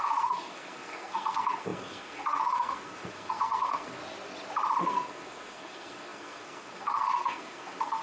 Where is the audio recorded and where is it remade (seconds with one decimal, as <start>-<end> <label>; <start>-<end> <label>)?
0.0-4.0 remade; 4.0-4.8 recorded; 4.8-8.0 remade